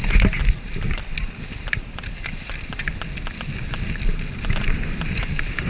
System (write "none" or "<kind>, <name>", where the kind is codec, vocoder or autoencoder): none